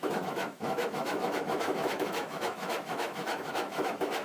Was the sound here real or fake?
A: fake